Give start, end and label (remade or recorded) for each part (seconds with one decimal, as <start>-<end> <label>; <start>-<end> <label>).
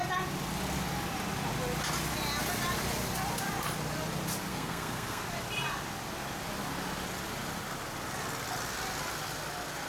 0.0-4.5 recorded; 4.5-5.2 remade; 5.2-9.9 recorded